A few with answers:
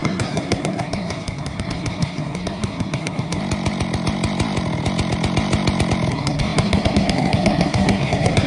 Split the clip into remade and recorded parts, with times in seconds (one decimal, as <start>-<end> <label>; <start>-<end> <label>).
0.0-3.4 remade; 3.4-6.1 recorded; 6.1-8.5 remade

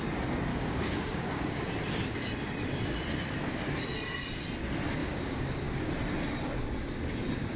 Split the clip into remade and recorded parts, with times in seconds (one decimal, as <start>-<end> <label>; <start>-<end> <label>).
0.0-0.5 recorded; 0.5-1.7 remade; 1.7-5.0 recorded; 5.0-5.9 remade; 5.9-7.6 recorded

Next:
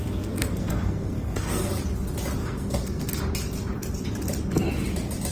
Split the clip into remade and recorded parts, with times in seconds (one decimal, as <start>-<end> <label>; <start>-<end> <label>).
0.0-1.7 remade; 1.7-2.4 recorded; 2.4-3.1 remade; 3.1-5.3 recorded